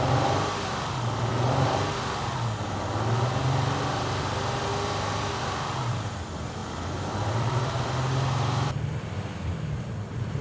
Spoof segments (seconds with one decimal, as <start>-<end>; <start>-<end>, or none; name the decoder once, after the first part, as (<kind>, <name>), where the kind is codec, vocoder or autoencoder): 0.0-1.3 (vocoder, BigVGAN v2); 3.9-6.6; 7.3-10.4